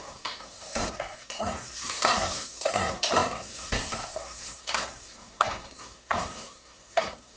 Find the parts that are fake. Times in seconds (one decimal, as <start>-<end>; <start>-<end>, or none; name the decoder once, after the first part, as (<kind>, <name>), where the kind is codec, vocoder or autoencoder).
0.0-7.4 (codec, SNAC)